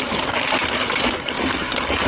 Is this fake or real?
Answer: real